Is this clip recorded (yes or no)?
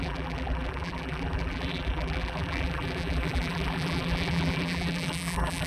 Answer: no